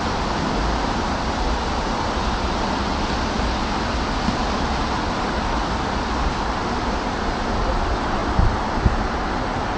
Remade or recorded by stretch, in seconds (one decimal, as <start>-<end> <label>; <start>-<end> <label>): 0.0-8.2 recorded; 8.2-9.8 remade